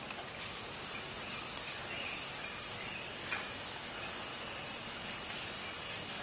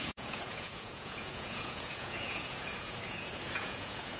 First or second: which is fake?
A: second